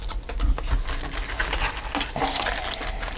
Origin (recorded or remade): recorded